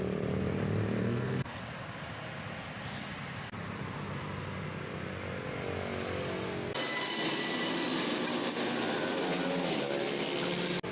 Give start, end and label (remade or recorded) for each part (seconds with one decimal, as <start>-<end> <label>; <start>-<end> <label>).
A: 0.0-1.0 recorded; 1.0-1.6 remade; 1.6-10.9 recorded